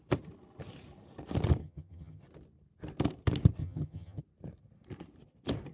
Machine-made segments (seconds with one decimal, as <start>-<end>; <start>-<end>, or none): 1.6-2.2; 3.6-4.2